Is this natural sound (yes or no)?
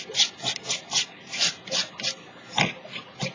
yes